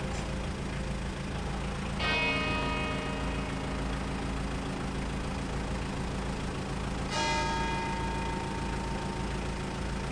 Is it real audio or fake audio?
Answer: real